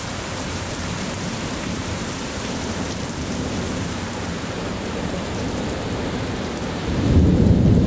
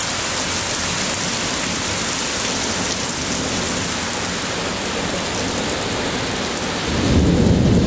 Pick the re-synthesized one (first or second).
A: first